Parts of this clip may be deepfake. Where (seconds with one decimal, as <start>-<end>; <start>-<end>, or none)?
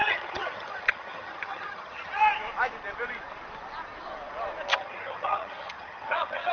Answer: 0.0-2.2; 4.7-6.5